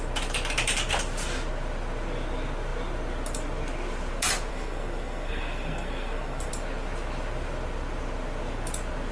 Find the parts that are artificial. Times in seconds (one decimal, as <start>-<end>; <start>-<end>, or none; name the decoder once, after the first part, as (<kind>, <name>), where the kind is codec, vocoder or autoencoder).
4.5-6.5 (codec, SNAC)